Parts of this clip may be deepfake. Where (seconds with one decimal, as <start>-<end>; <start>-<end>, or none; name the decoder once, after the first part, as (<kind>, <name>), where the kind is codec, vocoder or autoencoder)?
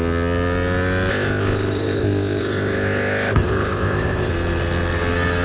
1.1-4.3 (codec, ZipCodec)